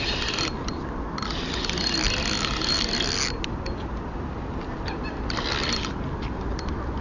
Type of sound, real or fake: real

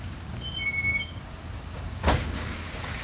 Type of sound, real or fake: fake